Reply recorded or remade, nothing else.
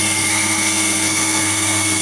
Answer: remade